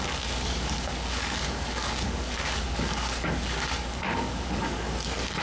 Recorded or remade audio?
remade